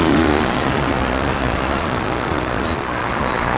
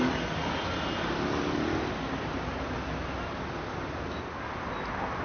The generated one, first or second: first